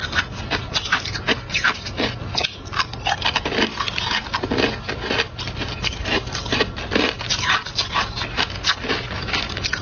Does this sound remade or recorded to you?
recorded